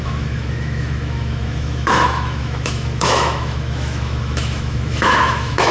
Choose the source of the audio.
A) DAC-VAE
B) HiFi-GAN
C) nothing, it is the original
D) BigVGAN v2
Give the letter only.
A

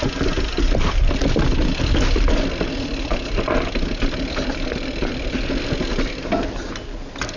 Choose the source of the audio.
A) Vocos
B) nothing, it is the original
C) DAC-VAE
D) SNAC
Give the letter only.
B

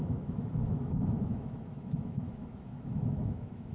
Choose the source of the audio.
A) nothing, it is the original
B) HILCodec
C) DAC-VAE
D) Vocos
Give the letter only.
C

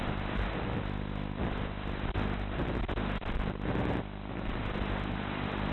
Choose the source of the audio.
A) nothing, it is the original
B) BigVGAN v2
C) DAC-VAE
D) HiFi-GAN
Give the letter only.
A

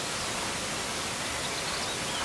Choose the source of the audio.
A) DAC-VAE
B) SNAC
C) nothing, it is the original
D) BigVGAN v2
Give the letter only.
C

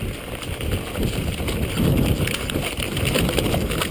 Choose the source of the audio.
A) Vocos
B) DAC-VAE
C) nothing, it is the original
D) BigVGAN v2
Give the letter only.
C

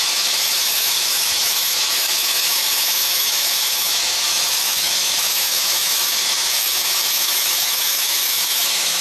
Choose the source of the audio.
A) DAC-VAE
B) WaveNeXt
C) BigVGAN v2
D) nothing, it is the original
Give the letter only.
A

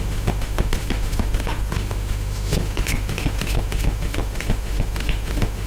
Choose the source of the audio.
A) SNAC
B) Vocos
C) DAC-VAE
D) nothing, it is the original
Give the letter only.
C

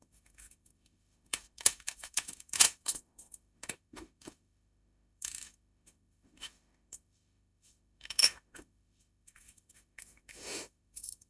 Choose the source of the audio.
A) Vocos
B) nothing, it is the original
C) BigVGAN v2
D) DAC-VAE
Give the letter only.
D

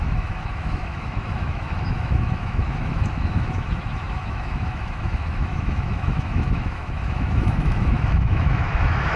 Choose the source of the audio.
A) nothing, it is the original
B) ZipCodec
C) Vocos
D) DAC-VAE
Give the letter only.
D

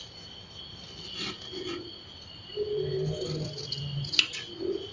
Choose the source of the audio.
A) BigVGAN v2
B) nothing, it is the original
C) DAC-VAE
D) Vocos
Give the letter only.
B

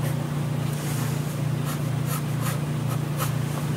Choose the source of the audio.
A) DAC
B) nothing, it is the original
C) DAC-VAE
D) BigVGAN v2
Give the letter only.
B